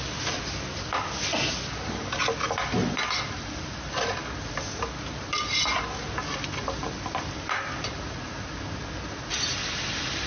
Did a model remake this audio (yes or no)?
no